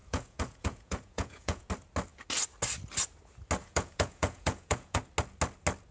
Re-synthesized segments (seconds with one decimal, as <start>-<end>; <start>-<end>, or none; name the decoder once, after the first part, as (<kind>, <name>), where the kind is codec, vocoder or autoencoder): 0.0-1.7 (vocoder, Vocos); 3.6-5.0